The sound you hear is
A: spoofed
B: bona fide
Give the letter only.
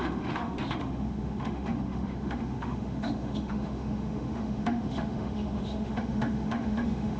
A